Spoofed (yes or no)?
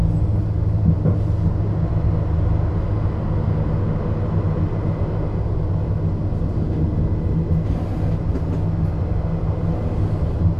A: no